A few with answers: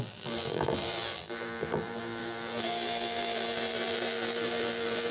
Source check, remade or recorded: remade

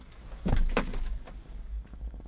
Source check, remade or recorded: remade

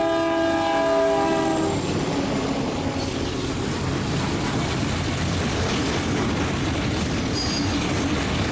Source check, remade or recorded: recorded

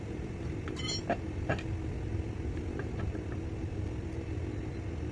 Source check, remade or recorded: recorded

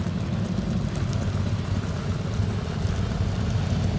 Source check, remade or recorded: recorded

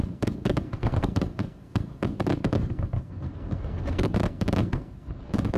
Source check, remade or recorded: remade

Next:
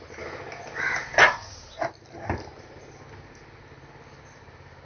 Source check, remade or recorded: recorded